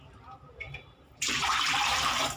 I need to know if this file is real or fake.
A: fake